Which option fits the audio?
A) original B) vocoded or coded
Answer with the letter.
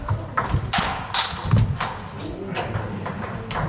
A